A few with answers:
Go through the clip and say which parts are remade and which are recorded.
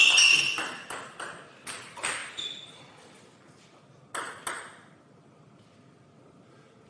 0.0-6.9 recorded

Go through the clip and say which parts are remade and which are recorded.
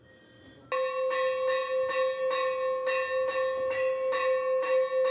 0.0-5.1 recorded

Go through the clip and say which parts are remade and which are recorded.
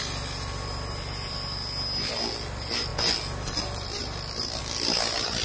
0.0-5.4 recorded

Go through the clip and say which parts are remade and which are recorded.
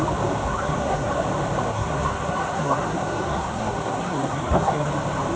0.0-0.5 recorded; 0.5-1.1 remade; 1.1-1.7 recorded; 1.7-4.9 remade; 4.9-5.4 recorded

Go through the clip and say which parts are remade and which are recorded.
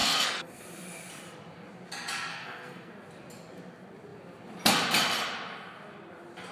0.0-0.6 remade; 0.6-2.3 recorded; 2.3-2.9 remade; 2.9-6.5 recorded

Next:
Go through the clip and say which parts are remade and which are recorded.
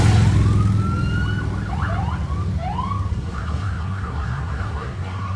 0.0-3.1 recorded; 3.1-5.4 remade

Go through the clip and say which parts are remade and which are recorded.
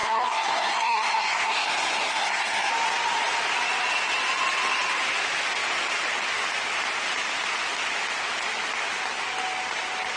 0.0-2.7 remade; 2.7-10.2 recorded